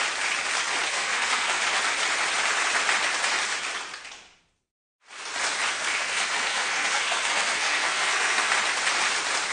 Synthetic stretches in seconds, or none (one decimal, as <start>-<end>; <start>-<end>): 0.9-1.6; 5.7-8.5